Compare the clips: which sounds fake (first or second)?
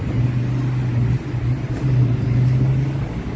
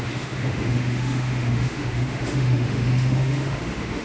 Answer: second